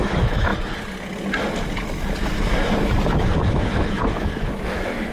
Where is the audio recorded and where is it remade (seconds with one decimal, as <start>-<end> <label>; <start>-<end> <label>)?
0.0-0.5 remade; 0.5-3.1 recorded; 3.1-5.1 remade